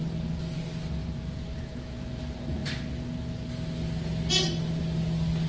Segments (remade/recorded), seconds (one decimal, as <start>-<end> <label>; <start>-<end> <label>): 0.0-5.5 recorded